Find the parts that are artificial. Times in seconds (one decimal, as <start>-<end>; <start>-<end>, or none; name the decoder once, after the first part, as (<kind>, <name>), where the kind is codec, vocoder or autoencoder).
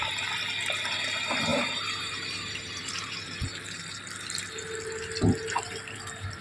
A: 1.5-3.4 (vocoder, BigVGAN v2)